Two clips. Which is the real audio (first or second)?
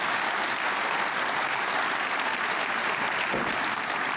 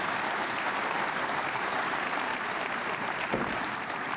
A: first